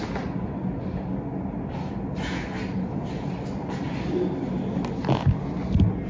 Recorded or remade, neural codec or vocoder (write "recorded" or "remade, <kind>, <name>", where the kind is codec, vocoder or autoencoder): recorded